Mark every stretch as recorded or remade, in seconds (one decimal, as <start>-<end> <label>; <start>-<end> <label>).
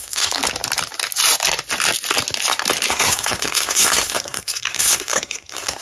0.0-0.4 remade; 0.4-2.9 recorded; 2.9-5.8 remade